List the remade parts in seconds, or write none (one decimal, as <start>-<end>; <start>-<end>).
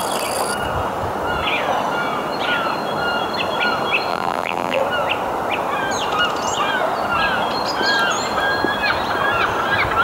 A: 4.1-4.8